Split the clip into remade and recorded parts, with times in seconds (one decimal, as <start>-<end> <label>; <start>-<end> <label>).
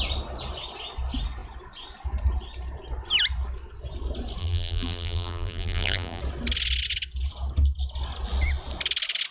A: 0.0-4.4 recorded; 4.4-6.2 remade; 6.2-9.3 recorded